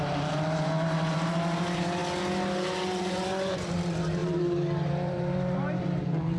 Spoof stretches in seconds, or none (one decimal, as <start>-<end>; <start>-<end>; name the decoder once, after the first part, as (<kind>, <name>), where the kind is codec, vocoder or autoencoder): 0.0-2.0 (vocoder, BigVGAN v2); 3.0-6.4